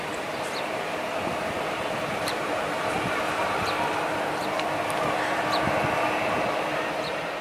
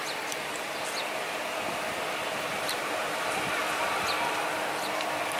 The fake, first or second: first